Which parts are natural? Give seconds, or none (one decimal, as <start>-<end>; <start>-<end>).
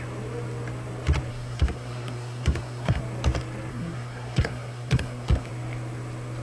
0.0-1.3; 3.0-3.7; 5.5-6.4